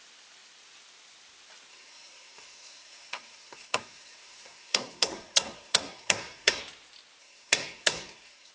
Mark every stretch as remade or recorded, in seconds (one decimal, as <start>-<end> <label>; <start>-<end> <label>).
0.0-1.7 recorded; 1.7-6.6 remade; 6.6-7.2 recorded; 7.2-8.5 remade